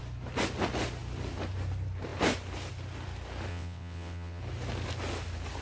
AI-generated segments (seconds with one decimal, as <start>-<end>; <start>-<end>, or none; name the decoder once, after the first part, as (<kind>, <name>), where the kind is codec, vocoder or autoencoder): 3.5-4.4 (vocoder, WaveNeXt)